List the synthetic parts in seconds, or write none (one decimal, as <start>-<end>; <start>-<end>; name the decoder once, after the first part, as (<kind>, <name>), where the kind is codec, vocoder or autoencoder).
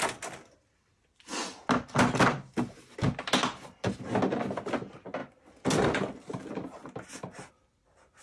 none